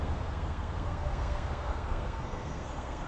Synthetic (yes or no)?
yes